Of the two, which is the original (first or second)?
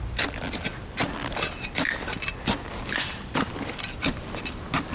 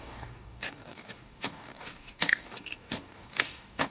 first